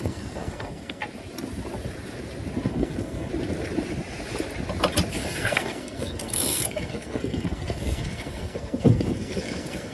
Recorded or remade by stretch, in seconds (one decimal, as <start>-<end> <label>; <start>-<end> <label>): 0.0-1.0 remade; 1.0-2.7 recorded; 2.7-3.3 remade; 3.3-5.1 recorded; 5.1-9.9 remade